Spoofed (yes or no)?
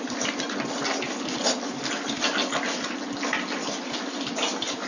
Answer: no